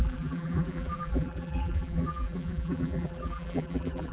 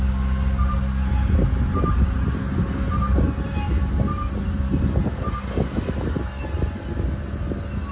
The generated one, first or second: first